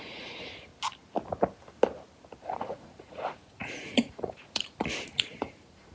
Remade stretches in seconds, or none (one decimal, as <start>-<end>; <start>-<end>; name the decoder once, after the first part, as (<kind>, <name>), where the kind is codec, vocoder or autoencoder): 0.0-0.7 (vocoder, Vocos); 2.4-5.9